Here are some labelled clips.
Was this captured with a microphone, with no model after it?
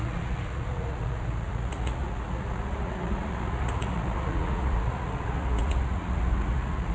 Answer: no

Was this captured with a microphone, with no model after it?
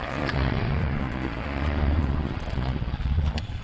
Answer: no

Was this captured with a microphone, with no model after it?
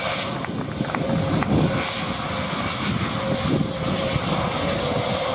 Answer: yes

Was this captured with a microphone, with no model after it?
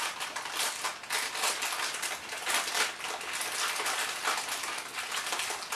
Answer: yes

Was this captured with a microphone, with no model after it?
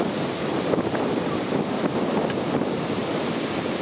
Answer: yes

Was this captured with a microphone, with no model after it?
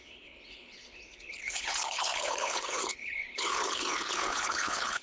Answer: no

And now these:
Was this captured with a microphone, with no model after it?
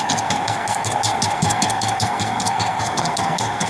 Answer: no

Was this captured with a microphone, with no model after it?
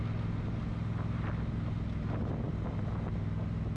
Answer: yes